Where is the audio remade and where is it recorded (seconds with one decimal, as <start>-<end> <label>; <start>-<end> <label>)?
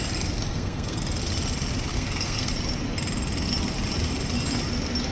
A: 0.0-0.5 recorded; 0.5-1.0 remade; 1.0-1.9 recorded; 1.9-2.5 remade; 2.5-5.1 recorded